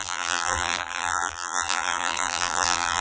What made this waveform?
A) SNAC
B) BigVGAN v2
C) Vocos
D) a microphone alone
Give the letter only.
B